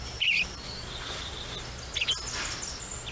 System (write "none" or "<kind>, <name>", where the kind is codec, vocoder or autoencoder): none